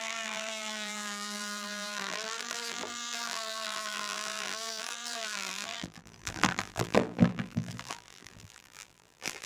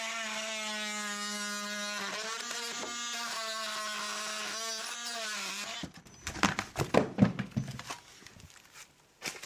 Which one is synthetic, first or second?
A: first